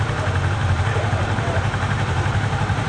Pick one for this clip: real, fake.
fake